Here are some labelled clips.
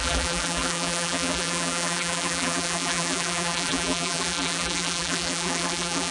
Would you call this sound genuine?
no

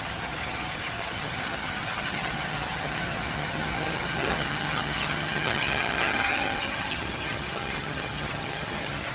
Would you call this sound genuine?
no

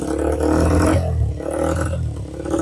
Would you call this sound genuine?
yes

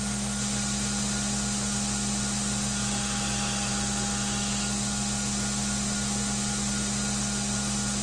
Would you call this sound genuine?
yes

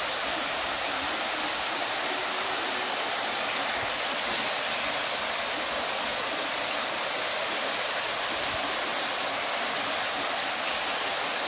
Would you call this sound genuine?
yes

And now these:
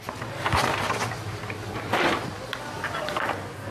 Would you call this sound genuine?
yes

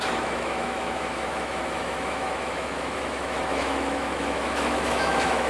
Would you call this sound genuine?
no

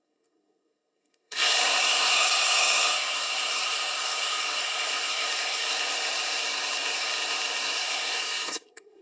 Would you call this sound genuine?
no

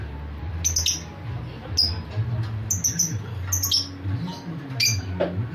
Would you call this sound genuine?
yes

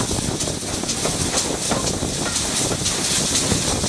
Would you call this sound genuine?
yes